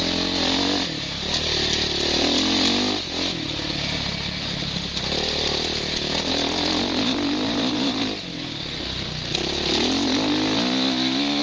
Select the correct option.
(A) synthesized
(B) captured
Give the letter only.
B